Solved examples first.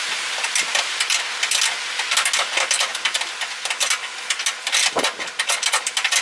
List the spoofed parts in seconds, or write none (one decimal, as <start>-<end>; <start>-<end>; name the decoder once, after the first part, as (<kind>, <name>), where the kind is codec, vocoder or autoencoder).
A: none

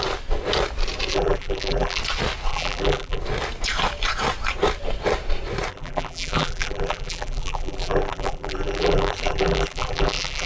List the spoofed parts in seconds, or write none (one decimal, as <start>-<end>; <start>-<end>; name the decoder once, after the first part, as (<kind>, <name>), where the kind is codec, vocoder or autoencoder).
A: 1.1-2.0 (vocoder, BigVGAN v2); 2.5-3.2; 5.7-10.5

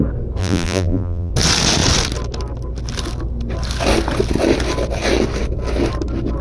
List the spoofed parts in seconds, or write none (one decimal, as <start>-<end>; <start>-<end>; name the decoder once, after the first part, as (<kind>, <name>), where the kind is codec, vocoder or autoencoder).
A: 0.4-1.3 (vocoder, BigVGAN v2)

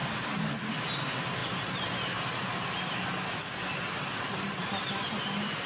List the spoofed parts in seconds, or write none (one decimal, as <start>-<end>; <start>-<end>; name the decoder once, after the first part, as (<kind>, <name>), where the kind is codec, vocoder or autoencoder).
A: 0.0-0.7 (vocoder, BigVGAN v2)

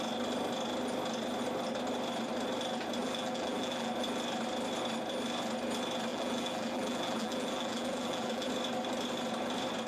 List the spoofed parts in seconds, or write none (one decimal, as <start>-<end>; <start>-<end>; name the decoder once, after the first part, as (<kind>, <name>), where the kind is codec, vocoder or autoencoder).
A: 3.0-3.9 (vocoder, BigVGAN v2); 6.1-8.5

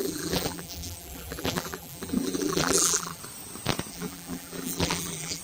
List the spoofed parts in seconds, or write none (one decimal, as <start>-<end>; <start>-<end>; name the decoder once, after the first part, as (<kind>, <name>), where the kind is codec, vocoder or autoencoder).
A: 0.0-3.2 (vocoder, BigVGAN v2); 3.9-5.4